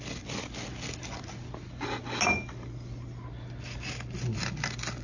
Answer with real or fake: real